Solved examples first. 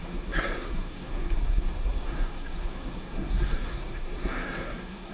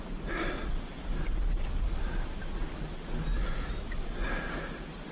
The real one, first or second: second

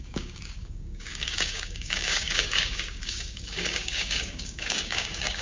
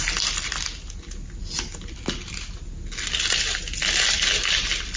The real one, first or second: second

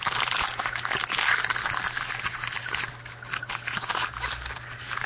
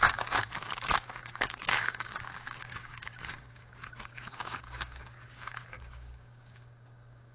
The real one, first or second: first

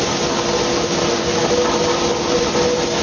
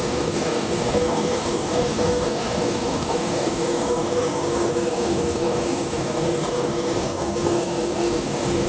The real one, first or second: first